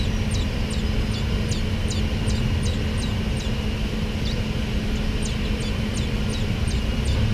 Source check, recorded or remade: recorded